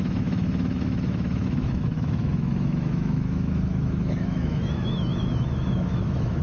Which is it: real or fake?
fake